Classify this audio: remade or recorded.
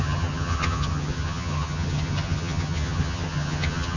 remade